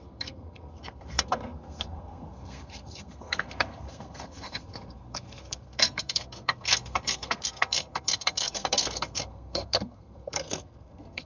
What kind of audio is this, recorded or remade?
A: remade